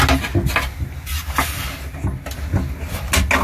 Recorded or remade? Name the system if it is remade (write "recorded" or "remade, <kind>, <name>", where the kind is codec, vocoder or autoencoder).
recorded